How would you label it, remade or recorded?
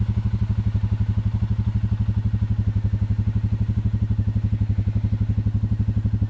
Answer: recorded